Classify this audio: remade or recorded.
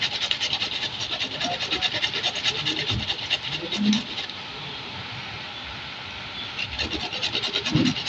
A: recorded